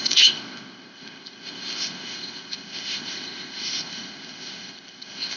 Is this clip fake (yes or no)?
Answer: yes